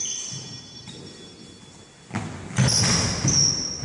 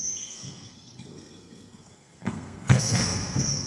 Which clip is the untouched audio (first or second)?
first